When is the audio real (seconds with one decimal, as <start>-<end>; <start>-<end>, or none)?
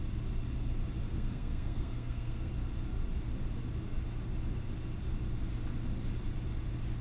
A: 0.0-1.0; 2.5-7.0